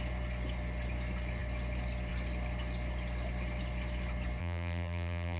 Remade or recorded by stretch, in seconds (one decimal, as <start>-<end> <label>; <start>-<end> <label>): 0.0-4.4 recorded; 4.4-5.4 remade